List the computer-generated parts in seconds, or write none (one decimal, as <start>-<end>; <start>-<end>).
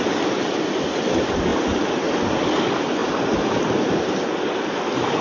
1.5-2.3; 3.0-3.6